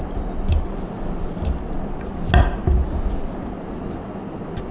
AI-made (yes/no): no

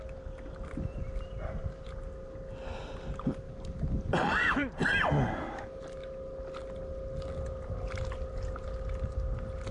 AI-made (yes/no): no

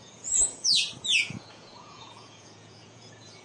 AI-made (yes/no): yes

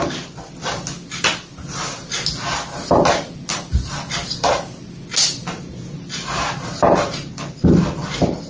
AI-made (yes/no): no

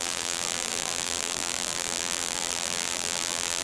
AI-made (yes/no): yes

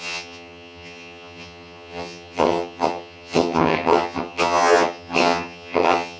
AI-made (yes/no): yes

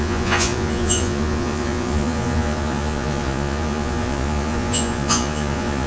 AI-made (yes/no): yes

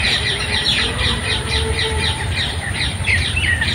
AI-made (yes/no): yes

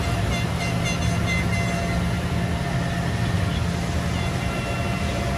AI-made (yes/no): no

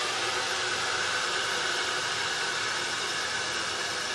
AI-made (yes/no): yes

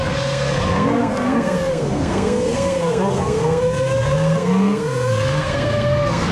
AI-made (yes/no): yes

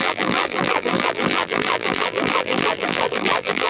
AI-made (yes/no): yes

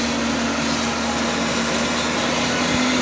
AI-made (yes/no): no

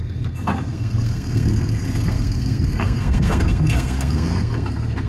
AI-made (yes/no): yes